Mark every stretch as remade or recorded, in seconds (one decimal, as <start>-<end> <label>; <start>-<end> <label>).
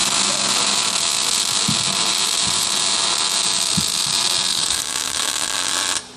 0.0-4.5 recorded; 4.5-5.7 remade; 5.7-6.2 recorded